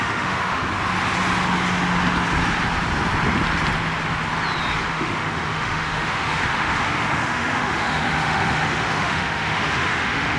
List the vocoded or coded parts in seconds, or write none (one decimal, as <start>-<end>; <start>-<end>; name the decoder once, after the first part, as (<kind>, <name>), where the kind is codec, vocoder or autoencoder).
0.0-0.6 (autoencoder, DAC-VAE); 4.9-10.4